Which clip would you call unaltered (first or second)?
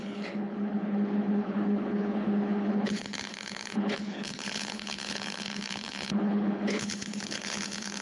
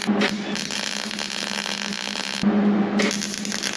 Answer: second